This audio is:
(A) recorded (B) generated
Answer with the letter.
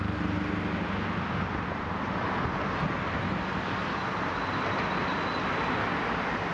A